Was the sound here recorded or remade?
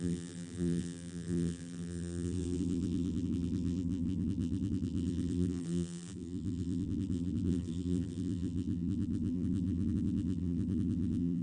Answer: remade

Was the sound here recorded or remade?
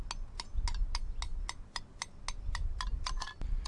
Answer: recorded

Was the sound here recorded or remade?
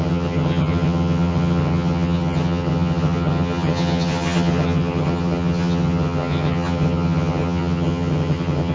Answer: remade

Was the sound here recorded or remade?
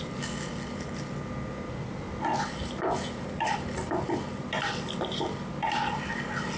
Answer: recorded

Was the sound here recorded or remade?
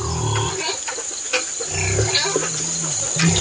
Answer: recorded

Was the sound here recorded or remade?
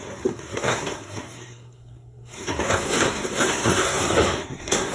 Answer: remade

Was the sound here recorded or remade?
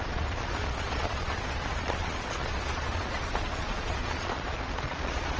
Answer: remade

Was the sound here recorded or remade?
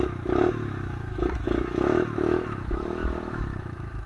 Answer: remade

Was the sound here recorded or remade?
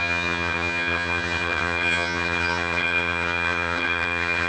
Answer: remade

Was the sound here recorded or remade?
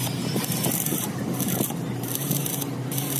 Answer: recorded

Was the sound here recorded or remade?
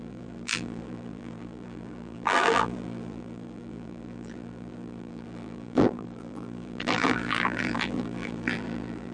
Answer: remade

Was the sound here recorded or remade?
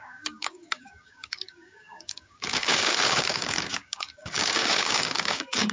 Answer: remade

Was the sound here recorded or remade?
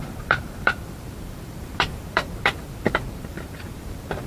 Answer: remade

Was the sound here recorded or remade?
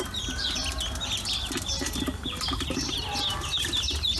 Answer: recorded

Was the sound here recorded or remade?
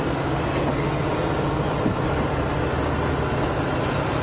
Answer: recorded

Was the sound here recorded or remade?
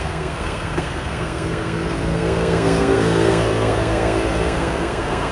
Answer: remade